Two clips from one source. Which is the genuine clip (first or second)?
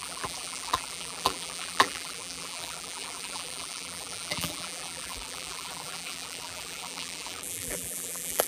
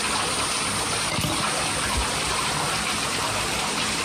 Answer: second